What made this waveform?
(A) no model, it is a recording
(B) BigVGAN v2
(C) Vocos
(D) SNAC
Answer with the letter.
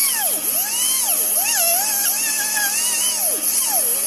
A